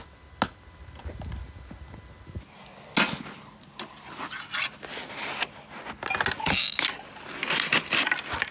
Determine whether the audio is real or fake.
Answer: real